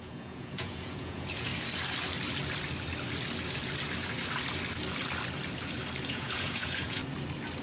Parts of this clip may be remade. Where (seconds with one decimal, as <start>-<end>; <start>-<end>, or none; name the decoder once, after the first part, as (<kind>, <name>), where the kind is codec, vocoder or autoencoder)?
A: 0.0-1.5 (vocoder, Vocos); 6.1-7.0